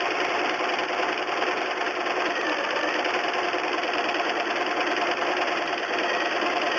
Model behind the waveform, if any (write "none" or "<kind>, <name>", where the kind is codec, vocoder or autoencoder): none